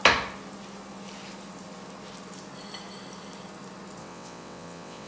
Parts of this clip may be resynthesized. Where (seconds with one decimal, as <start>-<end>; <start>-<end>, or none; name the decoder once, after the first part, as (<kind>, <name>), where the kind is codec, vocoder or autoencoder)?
4.0-5.1 (vocoder, WaveNeXt)